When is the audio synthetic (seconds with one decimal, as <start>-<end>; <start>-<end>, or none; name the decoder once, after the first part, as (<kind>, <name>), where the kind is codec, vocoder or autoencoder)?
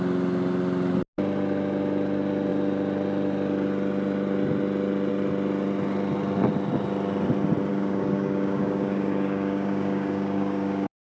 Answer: 7.7-11.2 (codec, DAC)